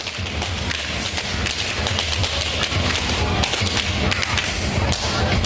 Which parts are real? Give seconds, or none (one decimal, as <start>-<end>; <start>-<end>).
0.0-5.5